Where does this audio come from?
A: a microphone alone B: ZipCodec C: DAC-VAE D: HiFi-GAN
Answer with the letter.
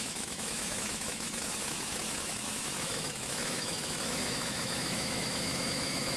C